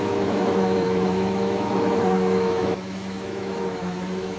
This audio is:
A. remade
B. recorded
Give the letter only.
A